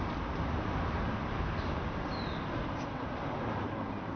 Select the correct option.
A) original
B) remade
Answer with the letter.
A